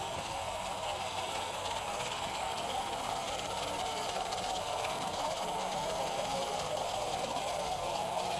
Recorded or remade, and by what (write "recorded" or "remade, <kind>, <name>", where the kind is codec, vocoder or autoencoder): remade, codec, SNAC